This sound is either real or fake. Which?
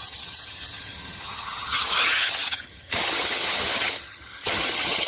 fake